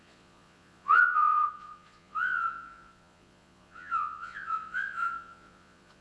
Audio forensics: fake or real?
fake